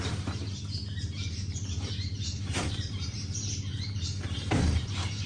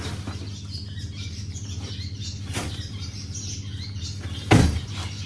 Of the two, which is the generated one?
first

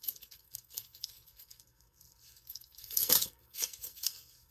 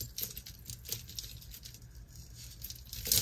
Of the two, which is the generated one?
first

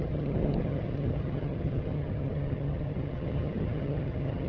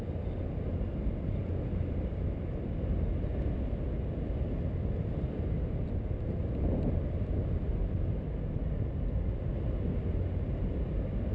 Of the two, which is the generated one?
first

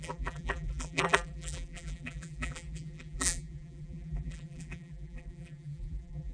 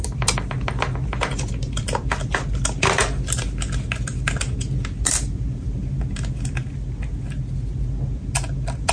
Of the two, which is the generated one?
first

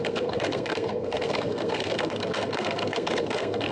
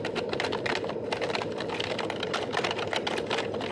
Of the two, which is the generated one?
first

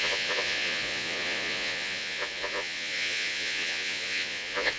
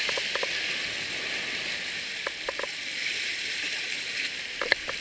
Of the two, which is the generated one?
first